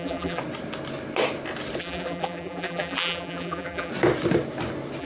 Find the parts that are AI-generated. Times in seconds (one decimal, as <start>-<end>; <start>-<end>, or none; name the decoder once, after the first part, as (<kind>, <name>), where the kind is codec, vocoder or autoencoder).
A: 0.0-0.4 (vocoder, BigVGAN v2); 1.8-3.9